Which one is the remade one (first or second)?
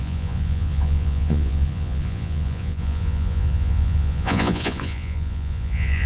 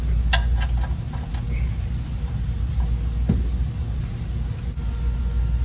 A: first